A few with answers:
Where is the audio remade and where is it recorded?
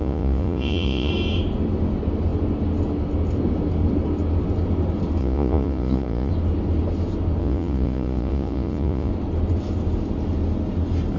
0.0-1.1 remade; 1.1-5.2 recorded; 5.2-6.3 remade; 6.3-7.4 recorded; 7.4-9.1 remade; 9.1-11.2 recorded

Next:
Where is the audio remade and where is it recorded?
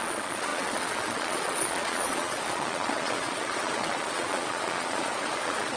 0.0-5.8 remade